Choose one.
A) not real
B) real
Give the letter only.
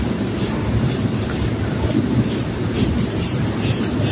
B